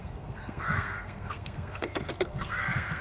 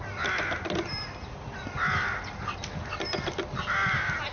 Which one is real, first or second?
second